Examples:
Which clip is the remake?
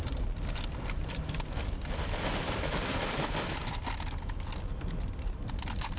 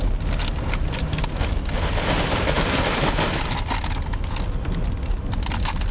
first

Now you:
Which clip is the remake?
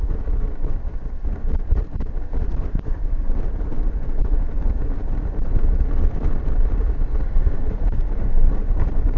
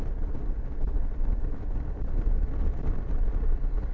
first